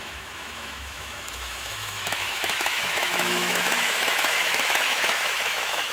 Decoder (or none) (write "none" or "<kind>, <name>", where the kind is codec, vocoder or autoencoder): autoencoder, DAC-VAE